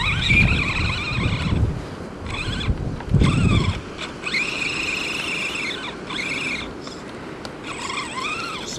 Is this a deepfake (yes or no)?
no